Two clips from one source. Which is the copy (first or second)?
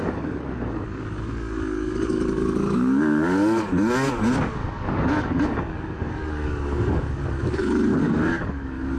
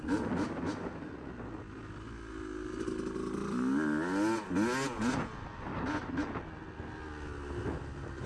first